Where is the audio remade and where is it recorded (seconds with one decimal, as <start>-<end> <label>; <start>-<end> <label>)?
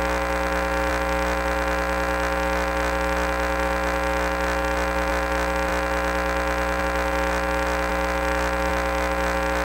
0.0-9.6 recorded